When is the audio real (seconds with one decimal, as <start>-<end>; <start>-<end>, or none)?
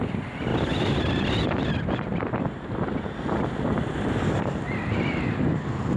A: 0.0-6.0